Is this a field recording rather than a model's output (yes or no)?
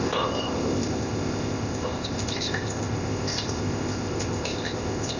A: no